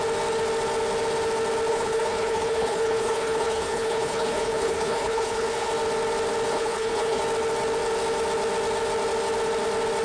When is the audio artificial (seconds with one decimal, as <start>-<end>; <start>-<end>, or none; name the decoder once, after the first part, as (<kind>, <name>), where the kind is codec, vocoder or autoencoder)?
1.7-5.7 (codec, HILCodec); 6.5-7.2